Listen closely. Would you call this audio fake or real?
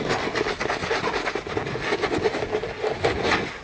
real